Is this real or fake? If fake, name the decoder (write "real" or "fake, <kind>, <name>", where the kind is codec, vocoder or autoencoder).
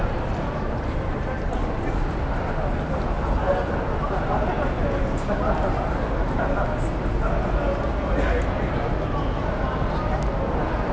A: real